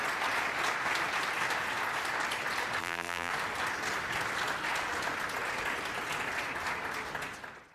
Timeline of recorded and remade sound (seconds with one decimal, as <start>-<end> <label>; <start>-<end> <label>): 0.0-2.8 recorded; 2.8-3.3 remade; 3.3-7.7 recorded